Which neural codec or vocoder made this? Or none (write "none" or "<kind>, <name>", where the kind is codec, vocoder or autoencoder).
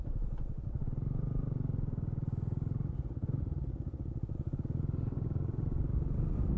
none